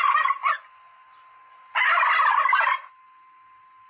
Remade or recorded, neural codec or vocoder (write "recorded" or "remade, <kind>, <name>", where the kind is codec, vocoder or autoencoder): recorded